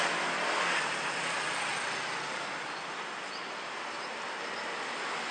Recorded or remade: recorded